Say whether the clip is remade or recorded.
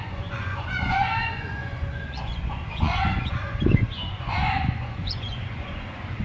remade